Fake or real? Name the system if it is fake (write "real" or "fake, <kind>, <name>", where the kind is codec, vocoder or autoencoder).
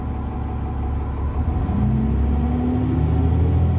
real